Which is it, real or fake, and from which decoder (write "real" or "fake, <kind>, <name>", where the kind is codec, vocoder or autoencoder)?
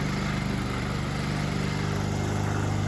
real